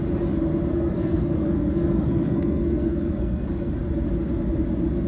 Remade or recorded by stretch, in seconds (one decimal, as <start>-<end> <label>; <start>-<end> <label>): 0.0-0.7 recorded; 0.7-3.8 remade; 3.8-5.1 recorded